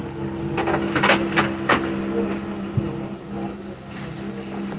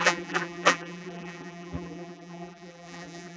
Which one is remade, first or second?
second